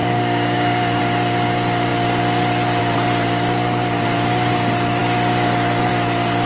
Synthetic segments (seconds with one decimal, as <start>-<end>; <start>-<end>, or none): 0.0-1.0